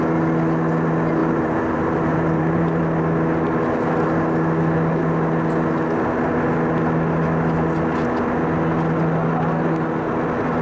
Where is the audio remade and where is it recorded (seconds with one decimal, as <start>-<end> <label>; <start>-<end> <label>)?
0.0-1.2 recorded; 1.2-2.8 remade; 2.8-10.6 recorded